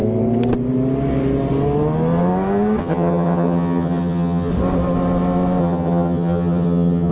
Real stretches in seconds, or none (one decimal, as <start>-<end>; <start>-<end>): 0.0-2.8; 4.5-5.6